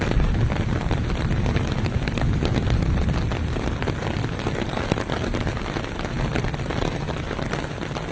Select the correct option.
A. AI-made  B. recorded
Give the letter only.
B